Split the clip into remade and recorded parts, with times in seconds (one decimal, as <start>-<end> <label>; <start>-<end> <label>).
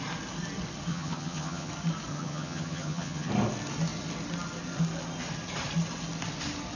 0.0-0.9 recorded; 0.9-1.7 remade; 1.7-2.1 recorded; 2.1-3.3 remade; 3.3-6.8 recorded